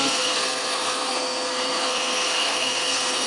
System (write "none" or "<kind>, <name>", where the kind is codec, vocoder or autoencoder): codec, SNAC